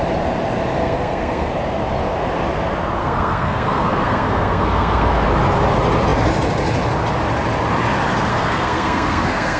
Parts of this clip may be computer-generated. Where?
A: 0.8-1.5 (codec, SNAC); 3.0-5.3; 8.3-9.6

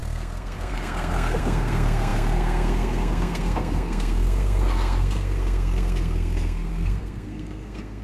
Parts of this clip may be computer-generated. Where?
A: 0.0-8.0 (codec, SNAC)

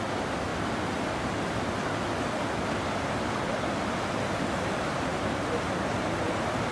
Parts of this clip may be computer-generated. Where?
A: none

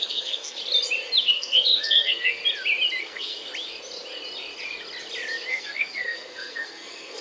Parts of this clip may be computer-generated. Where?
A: 0.0-0.6 (codec, SNAC); 1.2-2.4; 3.0-3.5; 5.5-7.2